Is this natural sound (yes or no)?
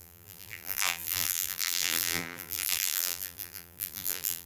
no